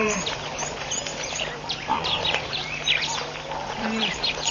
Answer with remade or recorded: remade